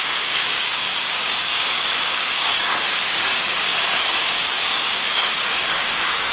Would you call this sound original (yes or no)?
no